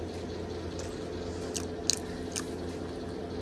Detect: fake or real real